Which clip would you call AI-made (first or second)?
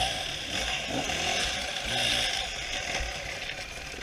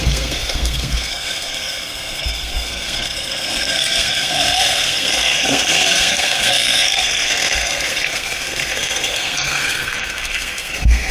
second